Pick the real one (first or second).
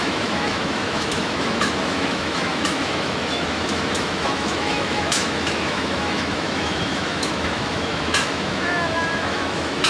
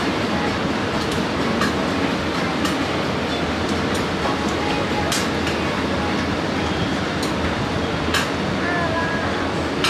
second